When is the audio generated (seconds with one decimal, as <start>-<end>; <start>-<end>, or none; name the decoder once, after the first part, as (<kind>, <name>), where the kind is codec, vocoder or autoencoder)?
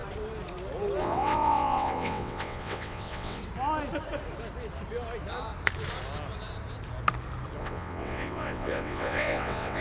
1.0-3.4 (vocoder, WaveNeXt); 7.6-9.8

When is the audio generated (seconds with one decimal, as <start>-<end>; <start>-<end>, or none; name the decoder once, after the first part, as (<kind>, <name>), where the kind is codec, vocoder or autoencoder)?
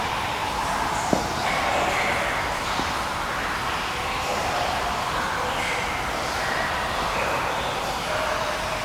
none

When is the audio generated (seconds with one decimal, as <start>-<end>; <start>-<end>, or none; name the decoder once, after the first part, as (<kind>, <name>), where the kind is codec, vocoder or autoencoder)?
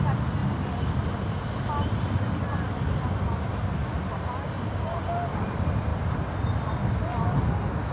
none